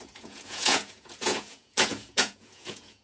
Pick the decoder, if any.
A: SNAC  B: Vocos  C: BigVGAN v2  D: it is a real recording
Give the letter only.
B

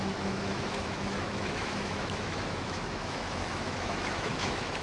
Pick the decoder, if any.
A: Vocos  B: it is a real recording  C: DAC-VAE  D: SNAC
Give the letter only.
C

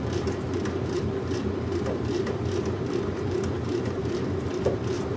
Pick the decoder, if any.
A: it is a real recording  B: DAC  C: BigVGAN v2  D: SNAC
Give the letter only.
C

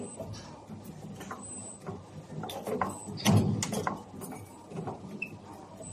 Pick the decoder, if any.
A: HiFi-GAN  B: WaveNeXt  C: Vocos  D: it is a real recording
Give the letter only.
D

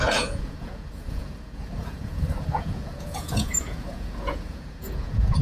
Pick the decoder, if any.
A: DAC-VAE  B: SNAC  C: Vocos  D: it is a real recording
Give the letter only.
C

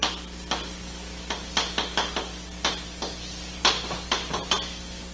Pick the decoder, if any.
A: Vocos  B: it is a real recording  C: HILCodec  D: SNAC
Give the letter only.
B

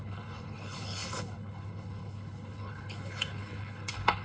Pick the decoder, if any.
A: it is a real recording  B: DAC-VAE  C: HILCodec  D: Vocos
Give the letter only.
C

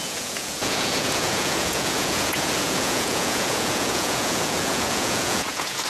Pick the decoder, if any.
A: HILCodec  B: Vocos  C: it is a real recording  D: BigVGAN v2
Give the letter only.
B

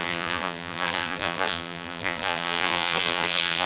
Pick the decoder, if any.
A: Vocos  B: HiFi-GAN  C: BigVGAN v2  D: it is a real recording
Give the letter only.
C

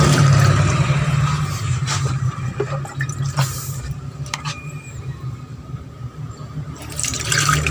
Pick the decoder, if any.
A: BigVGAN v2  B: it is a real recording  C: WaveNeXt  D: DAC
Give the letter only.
A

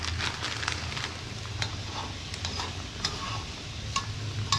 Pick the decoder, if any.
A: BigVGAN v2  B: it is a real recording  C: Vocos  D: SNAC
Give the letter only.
B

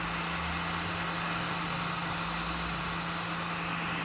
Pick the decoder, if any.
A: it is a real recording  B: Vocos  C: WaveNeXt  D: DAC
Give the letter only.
A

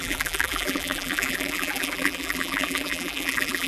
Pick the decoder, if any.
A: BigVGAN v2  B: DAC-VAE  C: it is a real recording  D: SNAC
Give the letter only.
A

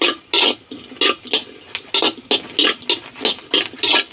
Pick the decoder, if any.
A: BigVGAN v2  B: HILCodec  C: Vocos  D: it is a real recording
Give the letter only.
D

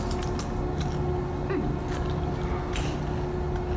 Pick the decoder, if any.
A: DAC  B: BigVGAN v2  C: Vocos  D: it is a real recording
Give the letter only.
D